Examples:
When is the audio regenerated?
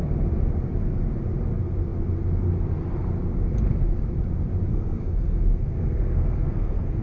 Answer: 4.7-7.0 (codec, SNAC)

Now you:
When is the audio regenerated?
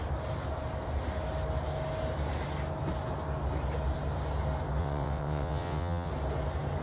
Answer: 4.8-6.1 (vocoder, WaveNeXt)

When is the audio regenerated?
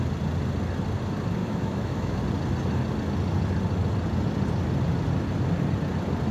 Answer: 1.4-2.2 (autoencoder, DAC-VAE)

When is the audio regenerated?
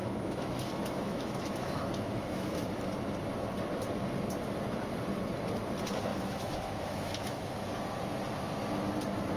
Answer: 0.0-2.6 (autoencoder, DAC-VAE); 6.1-7.7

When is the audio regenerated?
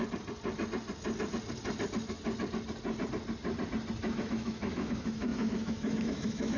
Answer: 4.0-6.6 (autoencoder, DAC-VAE)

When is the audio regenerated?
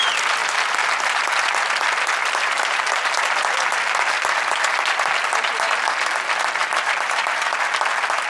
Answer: 6.6-7.5 (vocoder, BigVGAN v2)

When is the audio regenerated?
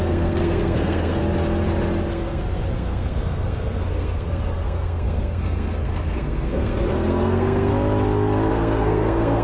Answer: 0.0-1.2 (codec, SNAC); 2.1-7.7; 8.5-9.4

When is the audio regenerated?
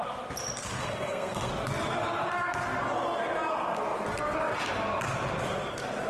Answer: 0.8-1.5 (codec, SNAC)